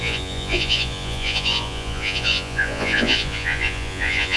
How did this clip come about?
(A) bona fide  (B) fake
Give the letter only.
B